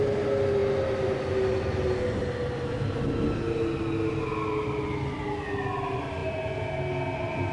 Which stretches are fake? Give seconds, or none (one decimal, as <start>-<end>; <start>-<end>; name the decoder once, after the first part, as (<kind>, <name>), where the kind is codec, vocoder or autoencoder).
none

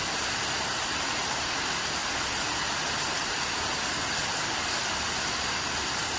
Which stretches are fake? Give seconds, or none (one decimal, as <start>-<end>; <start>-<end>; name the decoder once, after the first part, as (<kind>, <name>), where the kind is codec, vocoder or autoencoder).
none

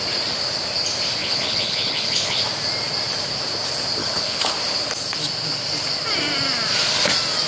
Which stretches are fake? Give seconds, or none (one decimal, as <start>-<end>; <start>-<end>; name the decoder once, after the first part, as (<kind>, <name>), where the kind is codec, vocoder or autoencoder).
1.2-2.4 (codec, HILCodec); 4.0-4.5

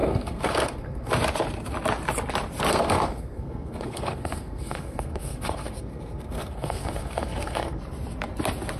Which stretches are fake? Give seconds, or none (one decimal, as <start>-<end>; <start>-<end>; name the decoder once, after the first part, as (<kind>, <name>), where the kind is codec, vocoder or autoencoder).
0.0-1.1 (codec, SNAC); 2.7-7.8

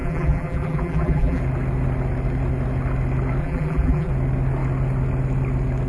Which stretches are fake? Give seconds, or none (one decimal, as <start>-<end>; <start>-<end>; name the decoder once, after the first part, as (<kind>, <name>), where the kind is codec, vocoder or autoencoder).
0.0-1.4 (vocoder, BigVGAN v2); 3.4-4.1

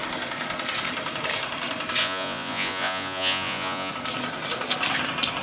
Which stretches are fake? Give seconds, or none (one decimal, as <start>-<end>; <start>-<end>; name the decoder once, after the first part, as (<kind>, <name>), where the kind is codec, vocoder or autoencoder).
2.0-3.9 (vocoder, Vocos)

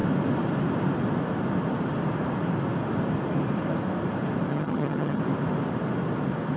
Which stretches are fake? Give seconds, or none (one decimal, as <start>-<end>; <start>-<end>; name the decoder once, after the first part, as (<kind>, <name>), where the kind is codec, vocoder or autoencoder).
4.5-5.2 (vocoder, HiFi-GAN)